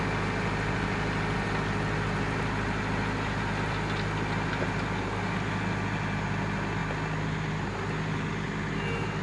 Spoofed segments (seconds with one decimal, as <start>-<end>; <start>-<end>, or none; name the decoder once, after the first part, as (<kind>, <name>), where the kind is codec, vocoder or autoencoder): none